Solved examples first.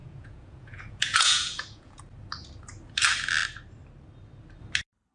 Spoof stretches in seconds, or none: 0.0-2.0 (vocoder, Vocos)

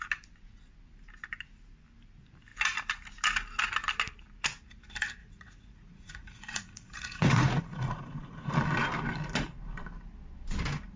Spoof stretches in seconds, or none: 5.2-8.5 (vocoder, Vocos)

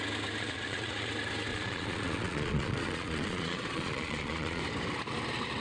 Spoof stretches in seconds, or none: 0.4-1.1 (vocoder, Vocos); 1.5-4.6

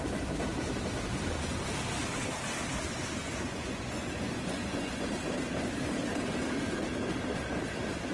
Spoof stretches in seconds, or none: 3.2-5.1 (vocoder, Vocos)

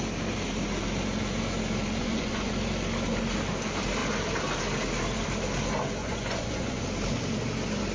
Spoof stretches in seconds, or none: 2.0-2.5 (vocoder, Vocos); 6.0-6.8

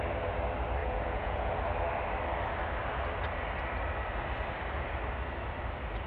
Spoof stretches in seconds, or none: 0.8-1.5 (vocoder, Vocos)

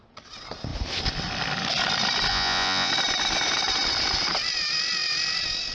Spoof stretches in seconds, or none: 2.3-2.9 (vocoder, Vocos)

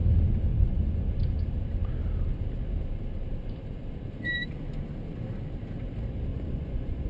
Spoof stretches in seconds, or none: 0.5-1.1 (vocoder, Vocos); 6.3-7.1